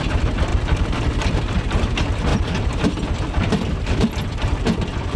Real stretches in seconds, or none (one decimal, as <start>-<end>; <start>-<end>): 0.0-0.5; 1.5-2.3